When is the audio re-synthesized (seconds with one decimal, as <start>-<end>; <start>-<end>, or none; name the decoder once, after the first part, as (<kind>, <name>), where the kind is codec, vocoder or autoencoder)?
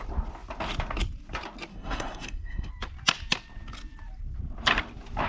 1.7-2.7 (codec, SNAC)